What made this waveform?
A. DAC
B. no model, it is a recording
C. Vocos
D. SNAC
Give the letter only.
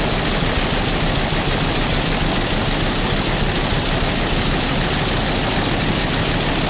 B